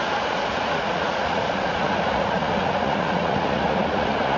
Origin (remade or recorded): remade